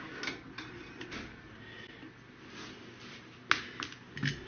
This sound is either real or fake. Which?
real